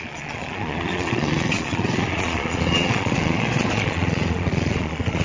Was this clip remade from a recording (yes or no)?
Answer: yes